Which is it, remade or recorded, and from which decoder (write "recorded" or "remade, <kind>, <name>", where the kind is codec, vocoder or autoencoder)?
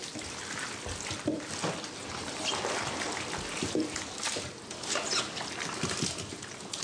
recorded